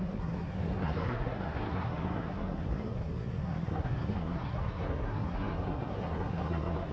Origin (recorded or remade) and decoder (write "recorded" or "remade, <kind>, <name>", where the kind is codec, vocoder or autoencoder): remade, codec, SNAC